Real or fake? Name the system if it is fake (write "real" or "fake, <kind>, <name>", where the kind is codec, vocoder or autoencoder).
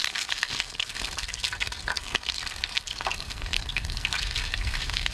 fake, codec, SNAC